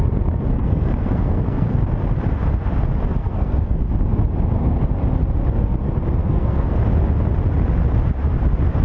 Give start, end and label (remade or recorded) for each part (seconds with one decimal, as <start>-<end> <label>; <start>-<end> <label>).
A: 0.0-0.5 recorded; 0.5-1.8 remade; 1.8-3.2 recorded; 3.2-3.8 remade; 3.8-6.2 recorded; 6.2-6.8 remade; 6.8-8.8 recorded